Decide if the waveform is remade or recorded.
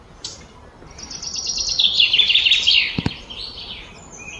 recorded